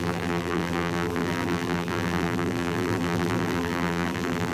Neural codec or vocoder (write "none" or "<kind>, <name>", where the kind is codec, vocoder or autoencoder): vocoder, BigVGAN v2